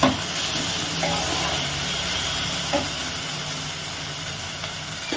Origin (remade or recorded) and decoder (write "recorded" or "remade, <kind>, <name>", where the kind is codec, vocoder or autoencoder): recorded